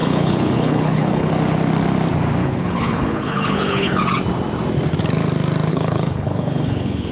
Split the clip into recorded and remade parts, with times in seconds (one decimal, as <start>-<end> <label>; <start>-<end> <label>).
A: 0.0-1.3 remade; 1.3-2.4 recorded; 2.4-4.0 remade; 4.0-5.7 recorded; 5.7-7.1 remade